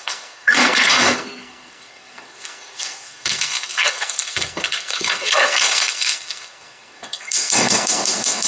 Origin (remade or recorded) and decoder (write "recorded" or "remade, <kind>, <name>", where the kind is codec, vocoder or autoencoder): remade, codec, SNAC